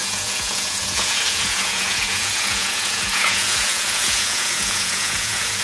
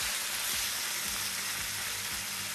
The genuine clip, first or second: second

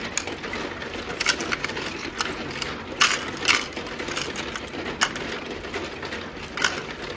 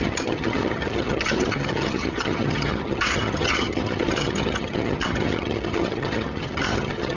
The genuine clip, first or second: first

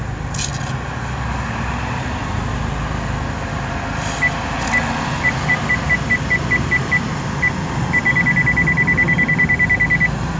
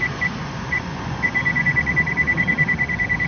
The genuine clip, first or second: first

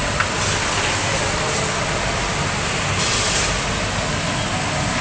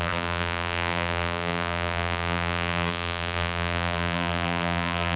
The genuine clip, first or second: first